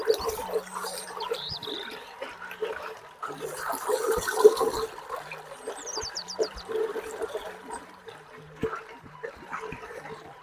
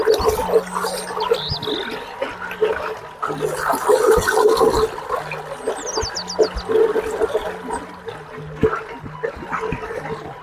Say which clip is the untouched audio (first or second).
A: second